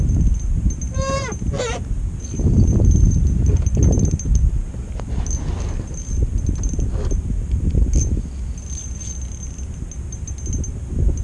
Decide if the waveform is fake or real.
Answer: real